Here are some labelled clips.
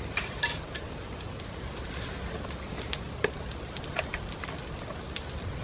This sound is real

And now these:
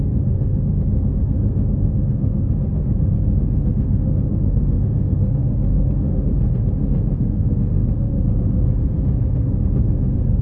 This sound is fake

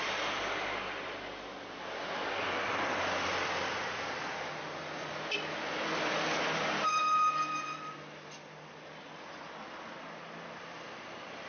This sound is real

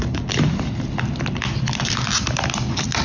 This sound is real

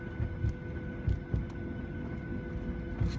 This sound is real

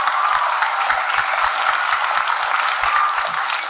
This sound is real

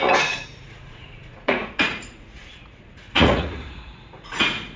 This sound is fake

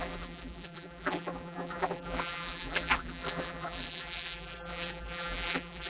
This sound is fake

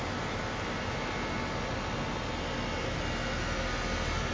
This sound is real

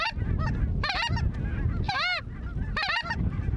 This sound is real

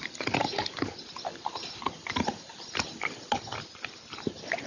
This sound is real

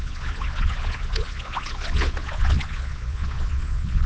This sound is fake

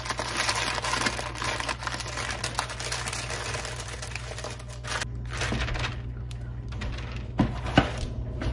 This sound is real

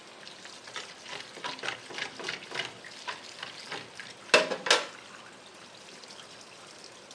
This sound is real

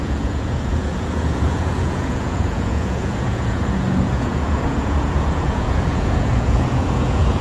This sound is fake